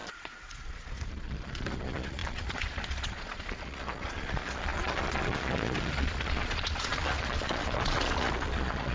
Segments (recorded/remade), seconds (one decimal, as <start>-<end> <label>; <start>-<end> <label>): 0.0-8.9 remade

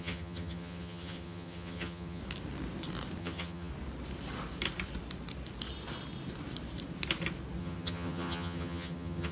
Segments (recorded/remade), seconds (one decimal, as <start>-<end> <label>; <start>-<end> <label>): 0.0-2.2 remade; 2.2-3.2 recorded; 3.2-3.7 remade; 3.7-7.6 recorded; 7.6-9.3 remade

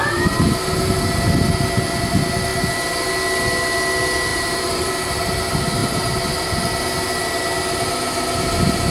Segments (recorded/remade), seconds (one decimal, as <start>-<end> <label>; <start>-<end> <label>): 0.0-4.3 recorded; 4.3-4.9 remade; 4.9-8.9 recorded